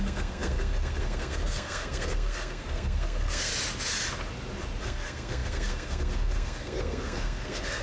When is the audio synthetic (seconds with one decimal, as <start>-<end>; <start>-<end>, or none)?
0.0-3.5; 4.8-7.8